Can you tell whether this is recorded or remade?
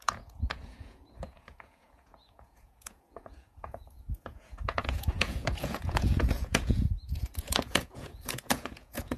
remade